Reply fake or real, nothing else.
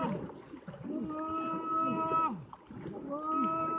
real